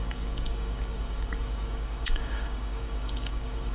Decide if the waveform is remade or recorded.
remade